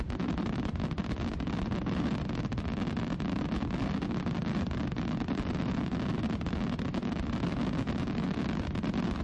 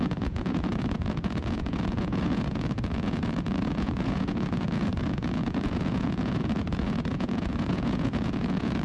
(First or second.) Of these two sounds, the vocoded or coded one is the second